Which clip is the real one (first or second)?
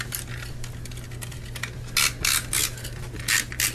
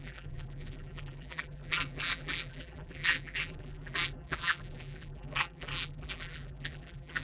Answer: first